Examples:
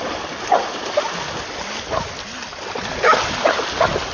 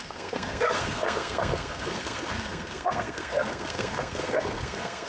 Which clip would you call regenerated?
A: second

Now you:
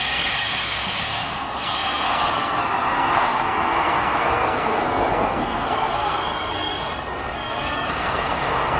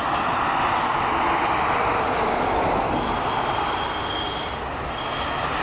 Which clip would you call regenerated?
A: first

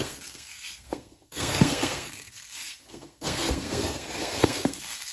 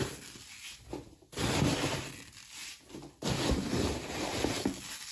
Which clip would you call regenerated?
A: first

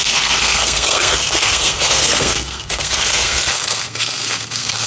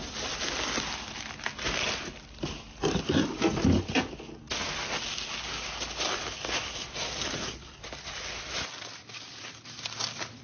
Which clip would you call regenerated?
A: first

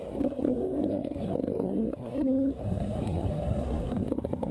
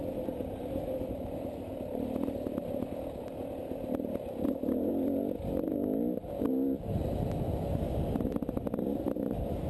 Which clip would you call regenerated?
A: first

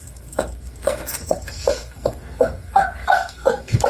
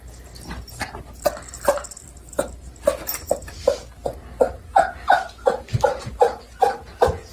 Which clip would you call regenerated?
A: first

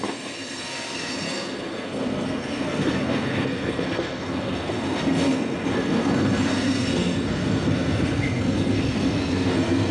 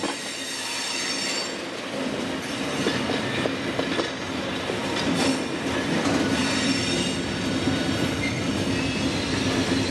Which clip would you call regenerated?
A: first